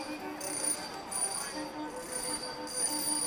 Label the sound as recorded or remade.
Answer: recorded